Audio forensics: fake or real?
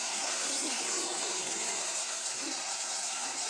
fake